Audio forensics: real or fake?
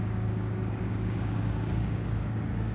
fake